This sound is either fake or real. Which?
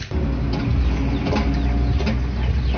real